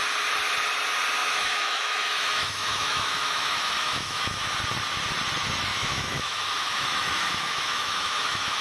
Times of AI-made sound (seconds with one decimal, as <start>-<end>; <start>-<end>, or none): 1.2-4.6; 5.7-8.6

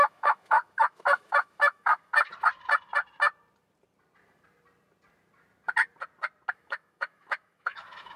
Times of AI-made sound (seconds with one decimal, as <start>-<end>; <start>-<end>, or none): 0.0-2.3; 6.5-8.2

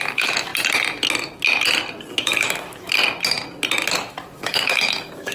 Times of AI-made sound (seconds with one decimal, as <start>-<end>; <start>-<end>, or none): 0.0-0.5; 2.1-3.0; 3.9-5.3